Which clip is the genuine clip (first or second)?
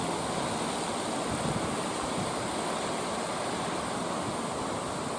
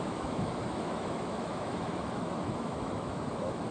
first